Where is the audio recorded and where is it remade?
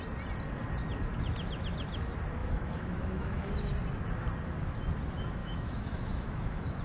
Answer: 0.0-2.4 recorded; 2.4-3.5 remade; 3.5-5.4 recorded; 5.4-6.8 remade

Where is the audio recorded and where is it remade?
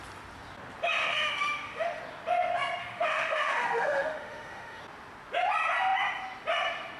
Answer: 0.0-1.0 recorded; 1.0-2.0 remade; 2.0-2.8 recorded; 2.8-4.8 remade; 4.8-7.0 recorded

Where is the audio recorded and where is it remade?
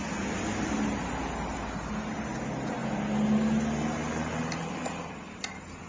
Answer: 0.0-5.9 recorded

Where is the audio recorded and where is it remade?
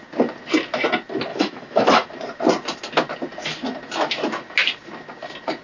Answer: 0.0-1.3 recorded; 1.3-2.1 remade; 2.1-5.6 recorded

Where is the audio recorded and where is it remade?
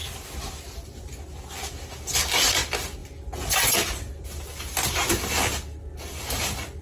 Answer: 0.0-6.8 recorded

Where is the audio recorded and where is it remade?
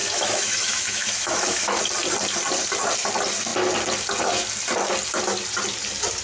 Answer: 0.0-1.8 remade; 1.8-6.2 recorded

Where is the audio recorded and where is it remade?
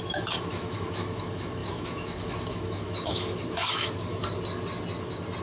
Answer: 0.0-4.2 remade; 4.2-5.4 recorded